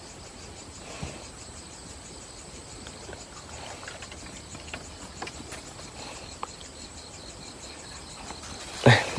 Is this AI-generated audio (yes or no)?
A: no